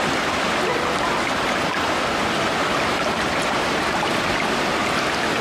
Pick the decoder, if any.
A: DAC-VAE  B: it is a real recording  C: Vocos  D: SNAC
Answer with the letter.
B